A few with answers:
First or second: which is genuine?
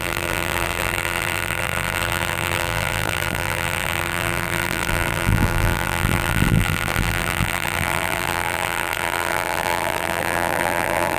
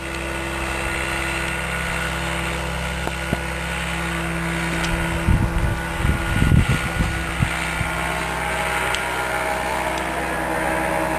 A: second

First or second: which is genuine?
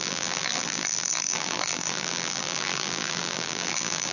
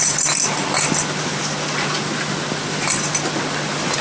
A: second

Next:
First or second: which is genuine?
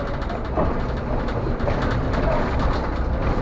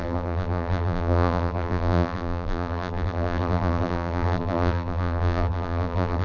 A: first